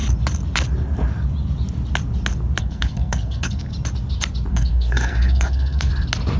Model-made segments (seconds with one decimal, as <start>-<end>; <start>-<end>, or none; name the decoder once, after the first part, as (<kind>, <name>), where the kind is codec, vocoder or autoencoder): 2.6-3.7 (codec, SNAC); 4.5-5.9